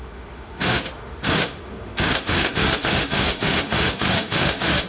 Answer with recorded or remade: remade